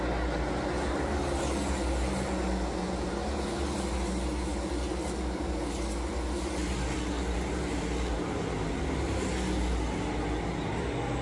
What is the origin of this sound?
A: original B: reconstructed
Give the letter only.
A